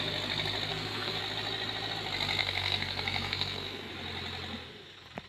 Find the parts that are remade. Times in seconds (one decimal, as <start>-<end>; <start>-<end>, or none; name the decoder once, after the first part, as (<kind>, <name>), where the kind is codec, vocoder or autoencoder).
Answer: 0.7-1.2 (codec, SNAC); 2.4-3.9